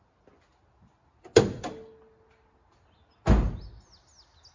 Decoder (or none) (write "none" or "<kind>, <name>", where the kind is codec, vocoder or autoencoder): none